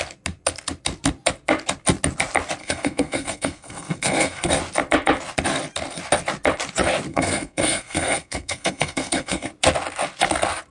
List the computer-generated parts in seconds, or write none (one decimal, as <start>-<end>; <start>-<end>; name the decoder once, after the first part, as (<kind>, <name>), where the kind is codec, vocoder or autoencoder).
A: 2.6-4.5 (codec, SNAC); 7.1-9.5